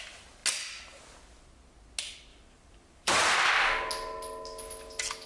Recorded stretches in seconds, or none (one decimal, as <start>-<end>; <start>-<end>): 0.0-2.3; 3.5-5.3